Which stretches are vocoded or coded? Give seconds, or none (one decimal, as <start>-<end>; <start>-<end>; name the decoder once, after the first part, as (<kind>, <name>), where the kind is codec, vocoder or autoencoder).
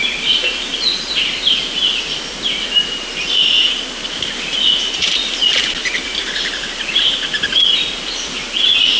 none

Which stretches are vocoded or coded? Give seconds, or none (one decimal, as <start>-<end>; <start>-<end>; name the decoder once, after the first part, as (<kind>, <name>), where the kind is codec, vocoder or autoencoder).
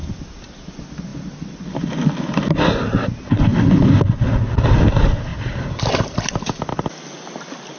0.0-0.7 (vocoder, BigVGAN v2); 1.1-2.3; 3.5-4.0; 5.3-6.7